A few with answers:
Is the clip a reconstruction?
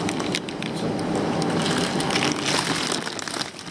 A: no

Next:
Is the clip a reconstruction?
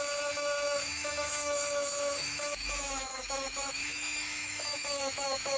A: yes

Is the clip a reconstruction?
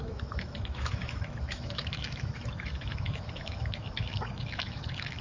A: yes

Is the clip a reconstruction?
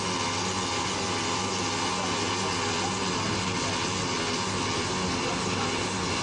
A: no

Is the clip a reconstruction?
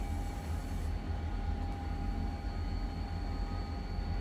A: no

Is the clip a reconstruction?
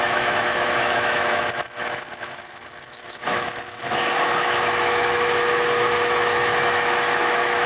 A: yes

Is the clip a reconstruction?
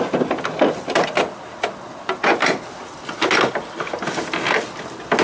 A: no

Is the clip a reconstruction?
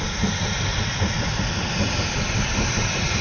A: no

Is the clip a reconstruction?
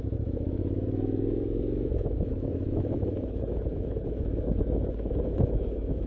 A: yes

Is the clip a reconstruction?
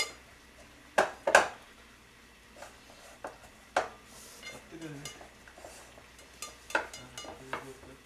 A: no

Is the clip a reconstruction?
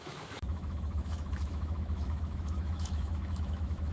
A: yes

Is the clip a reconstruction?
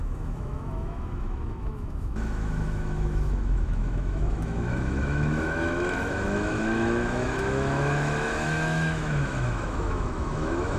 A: yes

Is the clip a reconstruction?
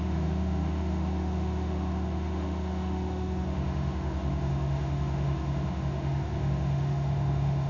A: yes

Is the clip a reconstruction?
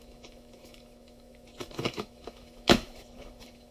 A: yes